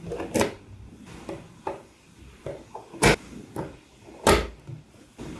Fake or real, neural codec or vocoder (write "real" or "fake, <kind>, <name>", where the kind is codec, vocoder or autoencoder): real